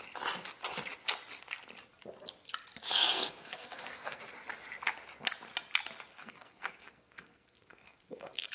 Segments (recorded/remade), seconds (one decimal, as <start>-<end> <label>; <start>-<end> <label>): 0.0-2.9 recorded; 2.9-4.2 remade; 4.2-6.1 recorded; 6.1-8.5 remade

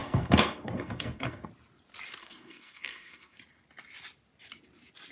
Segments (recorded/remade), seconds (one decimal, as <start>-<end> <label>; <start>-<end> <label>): 0.0-1.5 remade; 1.5-2.2 recorded; 2.2-3.4 remade; 3.4-5.1 recorded

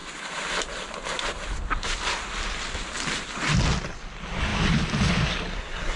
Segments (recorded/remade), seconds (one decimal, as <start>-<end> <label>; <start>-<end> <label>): 0.0-5.5 recorded; 5.5-6.0 remade